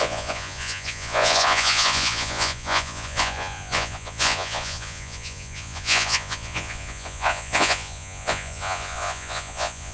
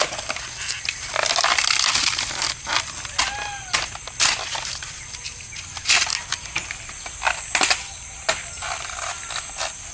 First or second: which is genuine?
second